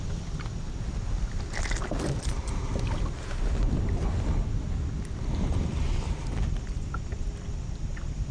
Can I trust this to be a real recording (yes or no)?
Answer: yes